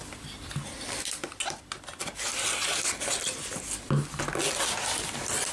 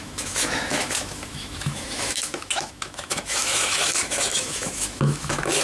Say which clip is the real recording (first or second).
first